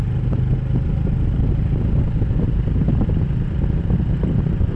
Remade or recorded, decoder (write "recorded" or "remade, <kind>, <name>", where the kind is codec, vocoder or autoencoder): recorded